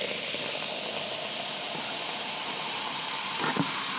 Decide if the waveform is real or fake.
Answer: real